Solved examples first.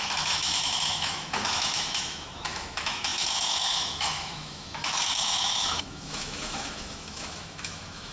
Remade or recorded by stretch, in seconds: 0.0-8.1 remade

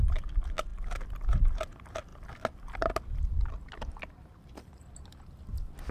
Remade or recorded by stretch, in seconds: 0.0-5.9 recorded

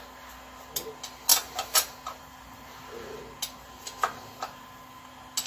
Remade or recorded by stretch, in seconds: 0.0-1.3 recorded; 1.3-3.2 remade; 3.2-5.5 recorded